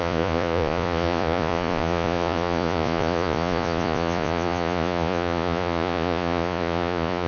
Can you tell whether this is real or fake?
fake